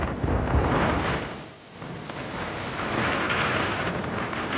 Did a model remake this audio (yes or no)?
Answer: no